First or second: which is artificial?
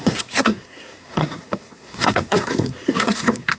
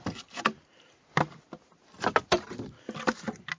first